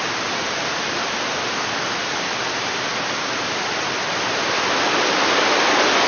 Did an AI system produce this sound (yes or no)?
no